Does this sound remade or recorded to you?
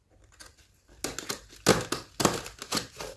recorded